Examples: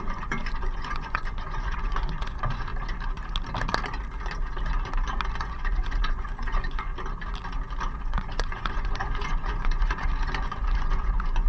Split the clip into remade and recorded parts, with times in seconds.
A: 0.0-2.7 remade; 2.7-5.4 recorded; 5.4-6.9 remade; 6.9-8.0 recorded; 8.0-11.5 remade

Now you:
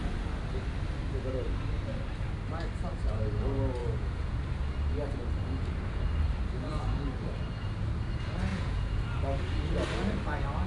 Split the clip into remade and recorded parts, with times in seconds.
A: 0.0-3.8 recorded; 3.8-4.4 remade; 4.4-8.5 recorded; 8.5-9.0 remade; 9.0-10.7 recorded

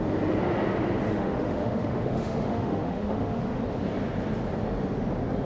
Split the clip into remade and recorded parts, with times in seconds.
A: 0.0-1.1 recorded; 1.1-3.6 remade; 3.6-5.4 recorded

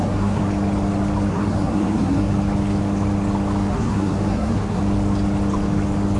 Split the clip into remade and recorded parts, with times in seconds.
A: 0.0-0.4 remade; 0.4-1.3 recorded; 1.3-2.3 remade; 2.3-3.7 recorded; 3.7-4.8 remade; 4.8-6.2 recorded

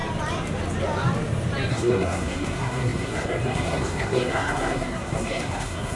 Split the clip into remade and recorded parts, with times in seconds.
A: 0.0-1.7 recorded; 1.7-6.0 remade

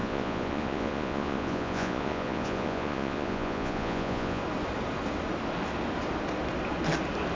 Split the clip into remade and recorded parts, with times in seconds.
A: 0.0-4.4 remade; 4.4-7.3 recorded

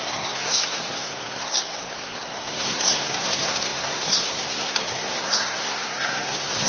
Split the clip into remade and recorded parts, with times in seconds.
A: 0.0-6.7 remade